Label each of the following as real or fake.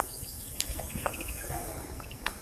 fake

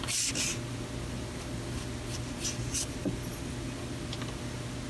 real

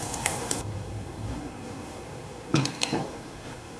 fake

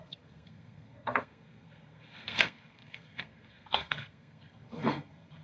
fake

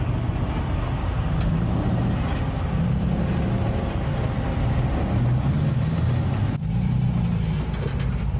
real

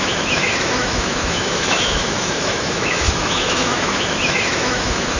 fake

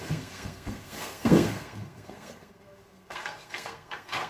fake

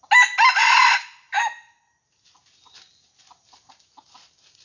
real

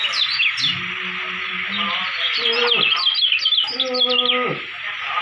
real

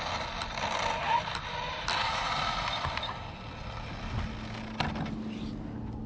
real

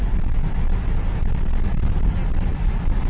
real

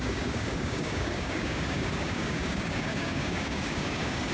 fake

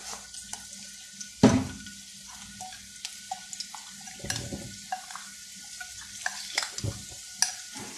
real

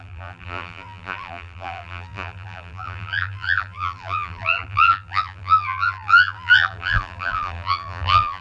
fake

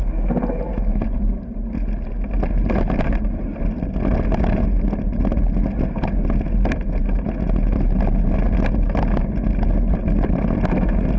real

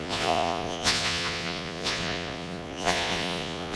fake